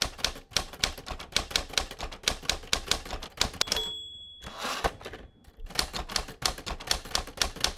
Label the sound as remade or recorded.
recorded